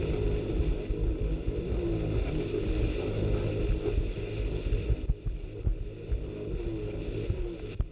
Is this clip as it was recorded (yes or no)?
yes